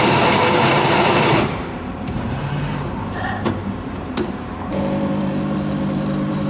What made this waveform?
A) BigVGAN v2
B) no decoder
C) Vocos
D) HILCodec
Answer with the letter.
A